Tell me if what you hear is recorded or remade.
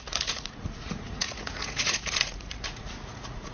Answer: remade